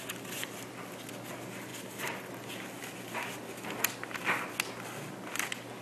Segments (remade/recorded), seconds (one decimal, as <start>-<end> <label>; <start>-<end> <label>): 0.0-5.8 recorded